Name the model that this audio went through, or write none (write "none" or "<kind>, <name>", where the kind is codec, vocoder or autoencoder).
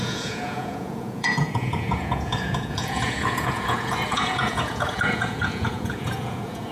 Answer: vocoder, Vocos